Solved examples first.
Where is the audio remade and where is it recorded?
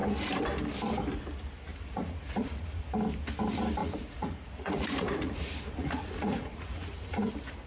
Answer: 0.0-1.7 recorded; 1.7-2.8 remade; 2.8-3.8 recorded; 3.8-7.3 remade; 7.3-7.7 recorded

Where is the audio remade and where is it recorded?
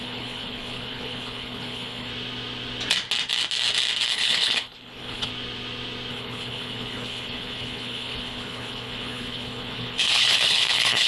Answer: 0.0-2.1 remade; 2.1-4.1 recorded; 4.1-5.3 remade; 5.3-6.1 recorded; 6.1-11.1 remade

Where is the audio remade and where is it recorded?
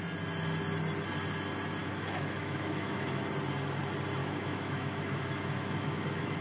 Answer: 0.0-1.8 recorded; 1.8-3.3 remade; 3.3-4.2 recorded; 4.2-6.4 remade